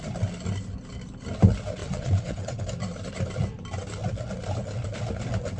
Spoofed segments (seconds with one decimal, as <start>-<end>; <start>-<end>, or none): 1.8-2.6